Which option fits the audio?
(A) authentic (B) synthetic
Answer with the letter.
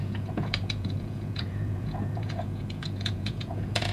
B